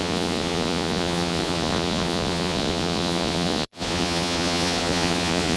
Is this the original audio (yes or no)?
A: no